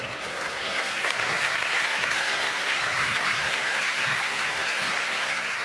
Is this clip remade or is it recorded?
remade